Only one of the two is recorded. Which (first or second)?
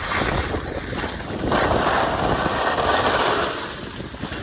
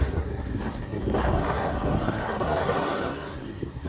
first